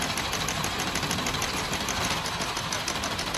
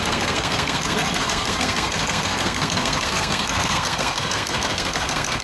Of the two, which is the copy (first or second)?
second